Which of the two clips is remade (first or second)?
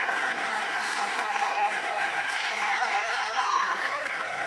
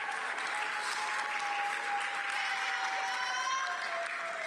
first